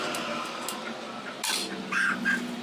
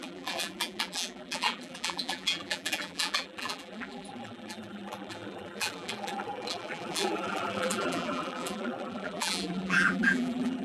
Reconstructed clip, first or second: second